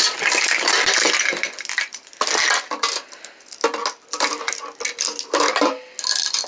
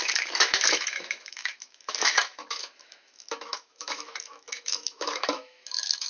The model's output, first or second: second